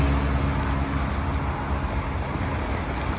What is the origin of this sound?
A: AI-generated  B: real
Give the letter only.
B